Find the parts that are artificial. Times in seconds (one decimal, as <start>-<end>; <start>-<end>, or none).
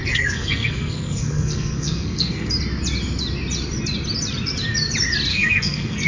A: 0.0-2.5; 5.3-6.1